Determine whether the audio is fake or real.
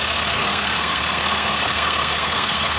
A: fake